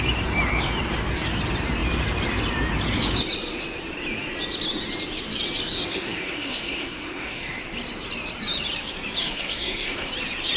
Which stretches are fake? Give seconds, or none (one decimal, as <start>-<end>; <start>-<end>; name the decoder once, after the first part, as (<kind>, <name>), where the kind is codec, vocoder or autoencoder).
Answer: 5.9-7.6 (codec, SNAC); 9.2-10.1